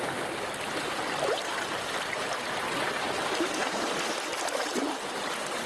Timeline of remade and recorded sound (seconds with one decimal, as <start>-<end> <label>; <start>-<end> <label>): 0.0-5.7 recorded